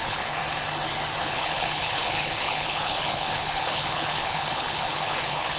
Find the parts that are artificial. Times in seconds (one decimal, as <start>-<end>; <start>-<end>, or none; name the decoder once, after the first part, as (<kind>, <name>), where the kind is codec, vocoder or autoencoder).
0.0-0.4 (codec, HILCodec); 1.2-5.6